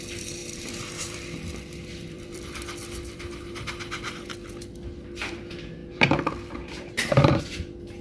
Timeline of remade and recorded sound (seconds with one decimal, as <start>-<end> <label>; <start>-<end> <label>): 0.0-0.4 recorded; 0.4-4.3 remade; 4.3-5.8 recorded; 5.8-7.4 remade; 7.4-8.0 recorded